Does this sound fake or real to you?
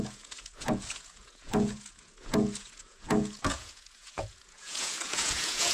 fake